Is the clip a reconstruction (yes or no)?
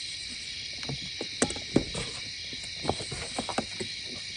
no